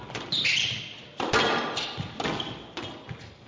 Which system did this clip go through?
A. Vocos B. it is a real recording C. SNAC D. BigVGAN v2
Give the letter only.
B